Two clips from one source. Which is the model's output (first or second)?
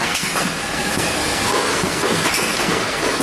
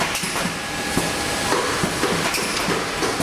first